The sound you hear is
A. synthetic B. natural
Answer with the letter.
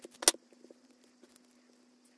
B